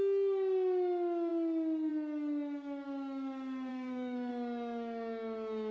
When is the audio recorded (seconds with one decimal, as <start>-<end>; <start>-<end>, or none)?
0.0-3.7; 4.3-5.7